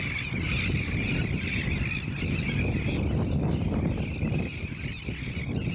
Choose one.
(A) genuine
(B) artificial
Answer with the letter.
A